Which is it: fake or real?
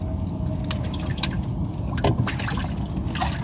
real